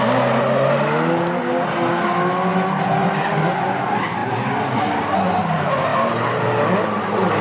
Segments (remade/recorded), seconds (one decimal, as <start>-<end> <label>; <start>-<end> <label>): 0.0-7.4 recorded